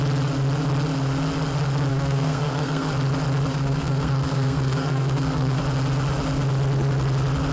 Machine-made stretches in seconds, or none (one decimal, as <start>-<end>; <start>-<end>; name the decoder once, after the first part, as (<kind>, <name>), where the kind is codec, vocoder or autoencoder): 1.9-2.9 (codec, SNAC); 3.5-5.6